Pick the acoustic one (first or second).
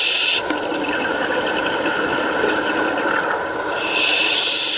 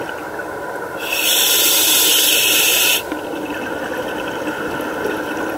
second